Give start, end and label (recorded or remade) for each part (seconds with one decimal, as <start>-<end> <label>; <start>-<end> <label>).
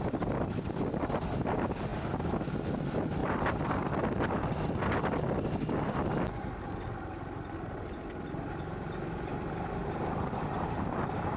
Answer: 0.0-11.4 recorded